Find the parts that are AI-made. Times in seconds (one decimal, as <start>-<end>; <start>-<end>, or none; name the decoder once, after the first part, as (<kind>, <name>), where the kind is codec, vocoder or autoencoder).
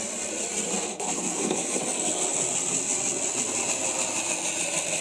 0.9-1.8 (codec, SNAC)